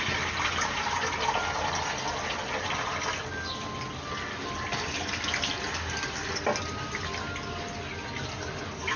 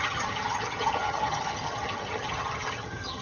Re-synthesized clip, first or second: second